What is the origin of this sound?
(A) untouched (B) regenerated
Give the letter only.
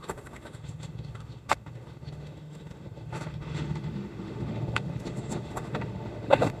B